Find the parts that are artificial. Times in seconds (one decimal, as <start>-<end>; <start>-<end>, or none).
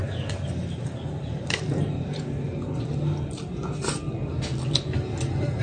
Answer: 0.0-3.4